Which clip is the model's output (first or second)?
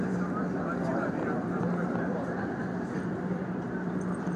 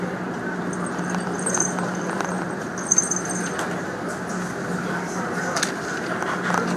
first